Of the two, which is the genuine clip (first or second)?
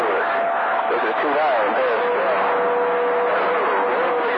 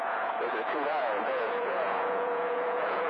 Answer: first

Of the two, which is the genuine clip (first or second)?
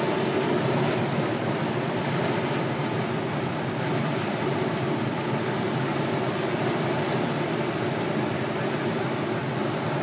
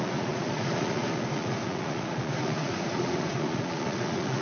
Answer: first